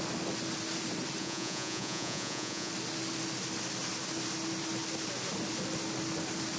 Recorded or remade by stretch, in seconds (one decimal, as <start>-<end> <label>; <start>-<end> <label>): 0.0-1.2 recorded; 1.2-2.7 remade; 2.7-6.6 recorded